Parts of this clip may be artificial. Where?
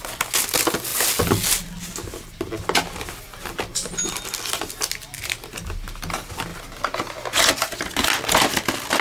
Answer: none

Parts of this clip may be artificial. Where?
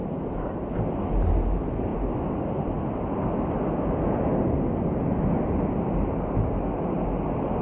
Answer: 0.0-0.5 (vocoder, BigVGAN v2)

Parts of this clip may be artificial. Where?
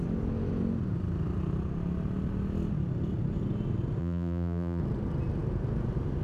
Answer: 4.0-4.8 (vocoder, BigVGAN v2)